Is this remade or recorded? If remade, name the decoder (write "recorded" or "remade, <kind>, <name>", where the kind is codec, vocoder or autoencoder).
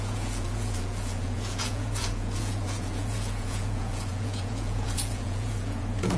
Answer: remade, vocoder, Vocos